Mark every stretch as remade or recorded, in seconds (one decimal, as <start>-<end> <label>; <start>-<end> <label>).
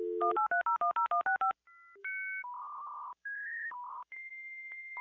0.0-2.0 recorded; 2.0-5.0 remade